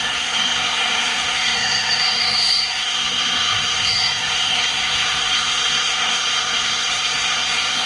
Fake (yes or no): yes